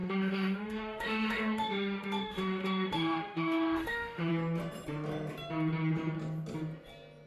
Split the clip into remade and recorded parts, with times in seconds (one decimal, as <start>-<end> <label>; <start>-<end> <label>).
0.0-4.3 remade; 4.3-7.3 recorded